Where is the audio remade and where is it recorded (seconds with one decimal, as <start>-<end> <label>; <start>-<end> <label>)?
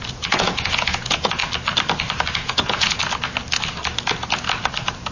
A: 0.0-1.4 remade; 1.4-2.3 recorded; 2.3-3.0 remade; 3.0-5.1 recorded